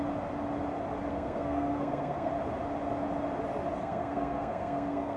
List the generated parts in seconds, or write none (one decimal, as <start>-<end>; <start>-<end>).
1.1-2.3; 3.8-5.2